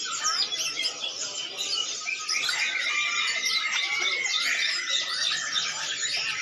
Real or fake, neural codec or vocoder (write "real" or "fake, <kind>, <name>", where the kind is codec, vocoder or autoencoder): real